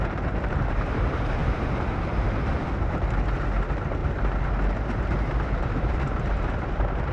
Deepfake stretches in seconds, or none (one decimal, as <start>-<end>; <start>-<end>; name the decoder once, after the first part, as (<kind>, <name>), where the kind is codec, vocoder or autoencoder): 0.0-4.0 (vocoder, BigVGAN v2); 5.6-7.1